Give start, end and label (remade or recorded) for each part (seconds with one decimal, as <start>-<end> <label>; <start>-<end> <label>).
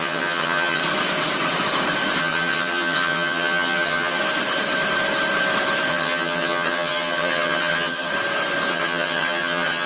0.0-0.8 remade; 0.8-2.2 recorded; 2.2-4.2 remade; 4.2-5.9 recorded; 5.9-8.1 remade; 8.1-8.7 recorded; 8.7-9.9 remade